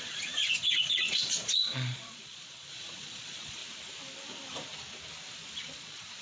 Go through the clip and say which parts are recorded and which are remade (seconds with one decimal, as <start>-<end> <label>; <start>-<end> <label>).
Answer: 0.0-3.6 remade; 3.6-5.6 recorded; 5.6-6.2 remade